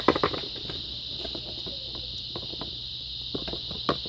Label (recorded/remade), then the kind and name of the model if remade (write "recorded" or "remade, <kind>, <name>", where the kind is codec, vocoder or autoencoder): remade, vocoder, BigVGAN v2